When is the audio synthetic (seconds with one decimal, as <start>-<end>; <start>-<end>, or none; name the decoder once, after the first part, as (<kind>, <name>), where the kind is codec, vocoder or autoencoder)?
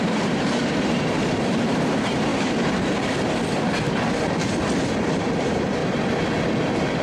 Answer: 0.0-2.3 (vocoder, BigVGAN v2); 5.2-5.8; 6.4-7.0